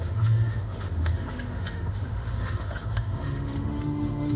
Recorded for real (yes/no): no